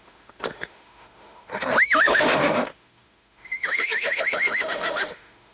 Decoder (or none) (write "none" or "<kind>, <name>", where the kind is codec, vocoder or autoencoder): autoencoder, DAC-VAE